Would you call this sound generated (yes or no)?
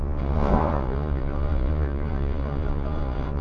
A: yes